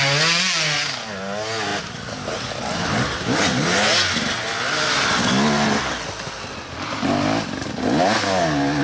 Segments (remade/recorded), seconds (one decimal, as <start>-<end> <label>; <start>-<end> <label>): 0.0-8.8 recorded

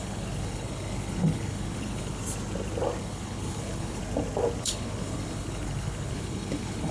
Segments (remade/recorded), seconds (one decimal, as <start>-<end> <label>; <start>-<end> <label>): 0.0-2.2 remade; 2.2-3.0 recorded; 3.0-4.0 remade; 4.0-4.6 recorded; 4.6-6.9 remade

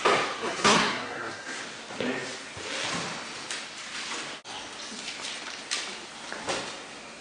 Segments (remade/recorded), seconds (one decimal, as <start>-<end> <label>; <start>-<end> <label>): 0.0-0.4 recorded; 0.4-1.6 remade; 1.6-7.2 recorded

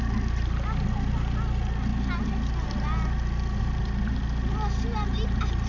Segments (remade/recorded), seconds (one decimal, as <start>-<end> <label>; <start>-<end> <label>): 0.0-5.7 recorded

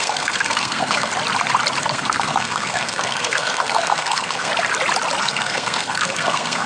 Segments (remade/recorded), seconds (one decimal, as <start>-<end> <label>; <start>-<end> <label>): 0.0-1.1 remade; 1.1-1.8 recorded; 1.8-4.5 remade; 4.5-5.2 recorded; 5.2-6.7 remade